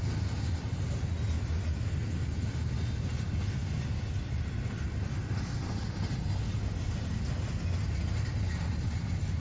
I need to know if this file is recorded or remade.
recorded